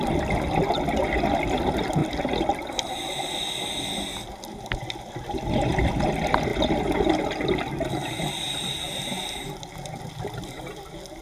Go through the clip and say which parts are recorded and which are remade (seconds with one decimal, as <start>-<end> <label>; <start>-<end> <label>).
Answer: 0.0-11.2 recorded